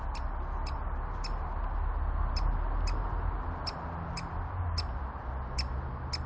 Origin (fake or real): real